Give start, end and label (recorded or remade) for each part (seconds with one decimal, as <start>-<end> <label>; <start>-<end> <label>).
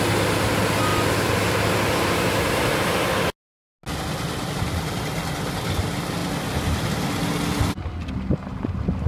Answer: 0.0-9.1 recorded